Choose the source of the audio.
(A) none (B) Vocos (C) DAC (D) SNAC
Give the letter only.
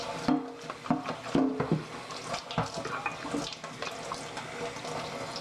A